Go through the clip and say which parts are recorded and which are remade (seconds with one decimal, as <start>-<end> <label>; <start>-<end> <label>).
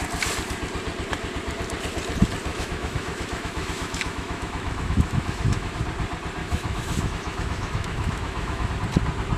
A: 0.0-2.5 recorded; 2.5-5.8 remade; 5.8-6.4 recorded; 6.4-8.7 remade; 8.7-9.4 recorded